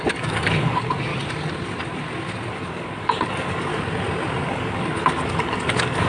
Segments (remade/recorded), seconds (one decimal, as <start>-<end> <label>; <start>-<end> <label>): 0.0-1.1 remade; 1.1-2.5 recorded; 2.5-3.7 remade; 3.7-4.4 recorded; 4.4-6.1 remade